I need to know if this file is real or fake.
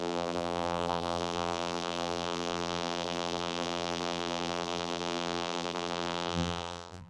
fake